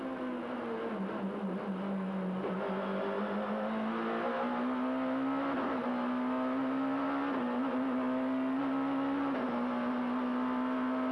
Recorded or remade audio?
recorded